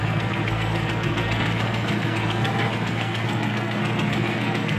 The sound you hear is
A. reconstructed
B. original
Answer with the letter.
A